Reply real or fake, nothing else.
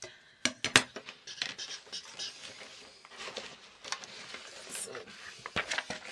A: real